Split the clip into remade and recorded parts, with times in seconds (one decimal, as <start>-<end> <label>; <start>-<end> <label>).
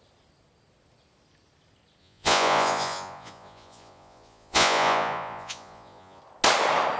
0.0-2.0 recorded; 2.0-6.2 remade; 6.2-7.0 recorded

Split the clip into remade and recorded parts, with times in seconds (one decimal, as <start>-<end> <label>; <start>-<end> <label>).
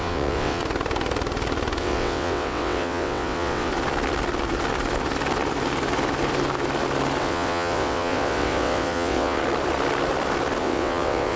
0.0-0.6 remade; 0.6-1.8 recorded; 1.8-3.7 remade; 3.7-7.2 recorded; 7.2-9.4 remade; 9.4-10.6 recorded; 10.6-11.4 remade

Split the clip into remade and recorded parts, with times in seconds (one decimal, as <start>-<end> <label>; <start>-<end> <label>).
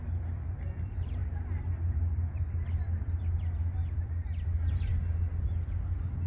0.0-1.2 remade; 1.2-1.7 recorded; 1.7-4.9 remade; 4.9-6.3 recorded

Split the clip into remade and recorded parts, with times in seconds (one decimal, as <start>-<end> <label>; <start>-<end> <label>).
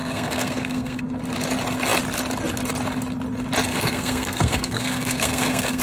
0.0-1.0 remade; 1.0-3.7 recorded; 3.7-5.8 remade